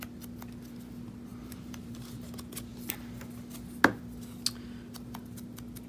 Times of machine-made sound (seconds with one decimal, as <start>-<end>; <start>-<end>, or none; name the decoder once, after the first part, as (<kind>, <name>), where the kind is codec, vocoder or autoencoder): 1.3-2.3 (vocoder, BigVGAN v2)

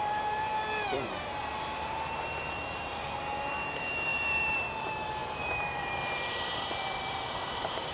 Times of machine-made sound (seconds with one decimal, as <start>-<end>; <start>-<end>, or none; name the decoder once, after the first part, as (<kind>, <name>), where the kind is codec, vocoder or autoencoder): 0.0-7.9 (vocoder, BigVGAN v2)

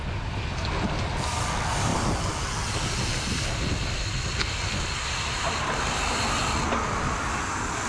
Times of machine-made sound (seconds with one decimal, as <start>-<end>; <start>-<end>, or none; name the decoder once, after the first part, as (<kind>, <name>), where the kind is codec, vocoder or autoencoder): none

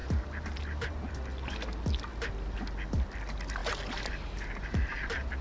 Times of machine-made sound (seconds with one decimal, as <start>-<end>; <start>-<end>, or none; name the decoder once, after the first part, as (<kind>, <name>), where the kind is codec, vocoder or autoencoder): 0.0-1.1 (vocoder, BigVGAN v2); 3.6-5.4